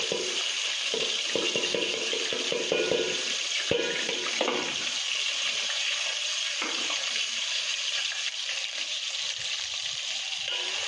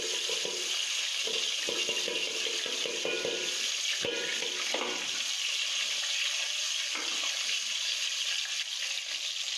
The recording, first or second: second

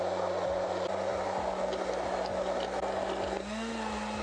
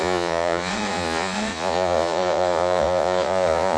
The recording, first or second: first